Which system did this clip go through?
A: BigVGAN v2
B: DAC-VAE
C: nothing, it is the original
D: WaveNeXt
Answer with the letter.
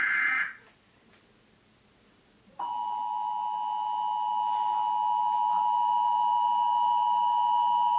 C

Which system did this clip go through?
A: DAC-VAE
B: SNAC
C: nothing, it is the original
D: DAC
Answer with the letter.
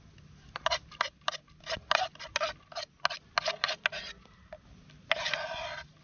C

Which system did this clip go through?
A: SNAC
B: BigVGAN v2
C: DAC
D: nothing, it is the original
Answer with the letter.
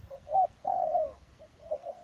A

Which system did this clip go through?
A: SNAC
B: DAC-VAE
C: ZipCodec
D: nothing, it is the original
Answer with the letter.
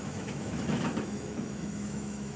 B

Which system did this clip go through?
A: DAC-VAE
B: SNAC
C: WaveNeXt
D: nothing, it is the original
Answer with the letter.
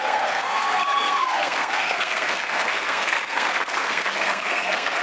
B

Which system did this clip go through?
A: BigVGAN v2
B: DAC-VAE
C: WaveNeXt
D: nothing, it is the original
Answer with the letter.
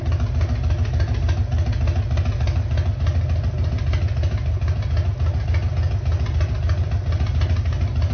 D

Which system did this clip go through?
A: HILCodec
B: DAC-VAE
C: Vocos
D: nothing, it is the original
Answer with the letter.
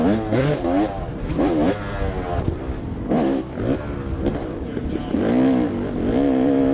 D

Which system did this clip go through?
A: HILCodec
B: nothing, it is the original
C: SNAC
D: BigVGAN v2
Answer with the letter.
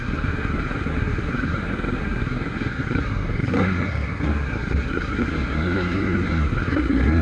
C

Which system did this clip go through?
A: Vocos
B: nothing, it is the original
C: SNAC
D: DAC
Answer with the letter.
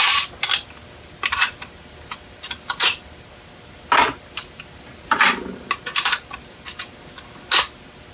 B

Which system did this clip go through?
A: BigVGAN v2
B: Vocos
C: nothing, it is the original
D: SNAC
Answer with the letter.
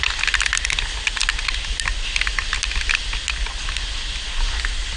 C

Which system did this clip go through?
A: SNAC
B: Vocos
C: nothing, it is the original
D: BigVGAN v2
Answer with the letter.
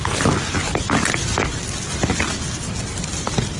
C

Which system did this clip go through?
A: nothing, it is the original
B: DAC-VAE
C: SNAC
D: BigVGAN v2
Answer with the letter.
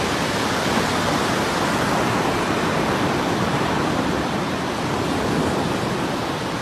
D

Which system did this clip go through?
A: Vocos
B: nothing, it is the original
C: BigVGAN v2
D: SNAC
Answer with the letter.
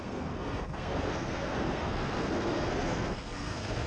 D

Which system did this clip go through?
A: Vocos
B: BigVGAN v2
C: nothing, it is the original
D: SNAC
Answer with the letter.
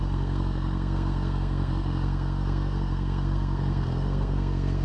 D